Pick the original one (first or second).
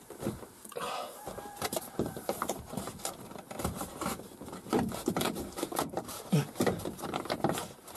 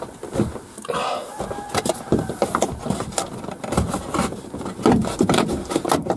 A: second